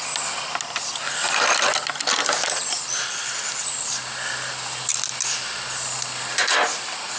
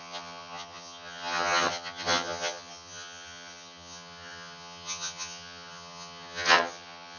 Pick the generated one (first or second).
second